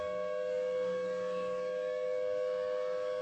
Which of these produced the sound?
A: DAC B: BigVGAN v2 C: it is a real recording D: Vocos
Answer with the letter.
A